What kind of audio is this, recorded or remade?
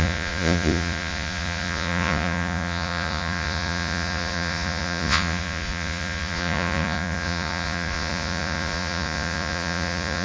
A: remade